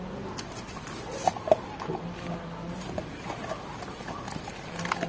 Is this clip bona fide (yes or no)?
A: yes